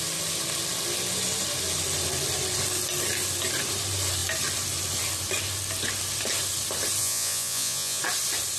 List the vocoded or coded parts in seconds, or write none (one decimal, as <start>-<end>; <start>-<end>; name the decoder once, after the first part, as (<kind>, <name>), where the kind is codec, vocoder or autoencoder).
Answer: 7.0-8.0 (vocoder, Vocos)